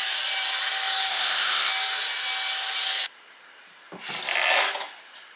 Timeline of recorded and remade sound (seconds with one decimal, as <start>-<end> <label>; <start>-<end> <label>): 0.0-1.1 recorded; 1.1-1.7 remade; 1.7-5.4 recorded